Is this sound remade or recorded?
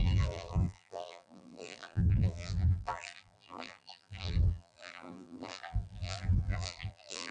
remade